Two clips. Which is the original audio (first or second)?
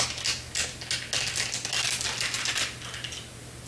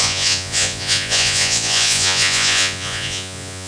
first